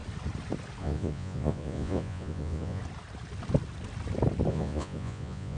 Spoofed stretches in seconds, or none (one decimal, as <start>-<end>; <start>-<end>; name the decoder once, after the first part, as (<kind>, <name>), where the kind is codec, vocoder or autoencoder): 0.8-2.8 (vocoder, Vocos); 4.5-5.6